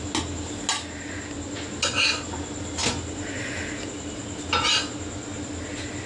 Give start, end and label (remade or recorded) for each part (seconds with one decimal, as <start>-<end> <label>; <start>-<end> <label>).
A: 0.0-6.1 recorded